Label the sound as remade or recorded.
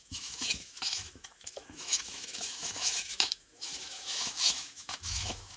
remade